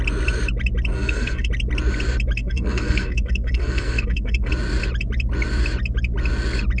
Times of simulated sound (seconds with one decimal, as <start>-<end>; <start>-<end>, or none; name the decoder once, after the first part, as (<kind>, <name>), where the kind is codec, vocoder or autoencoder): 0.9-1.5 (codec, SNAC); 2.4-4.5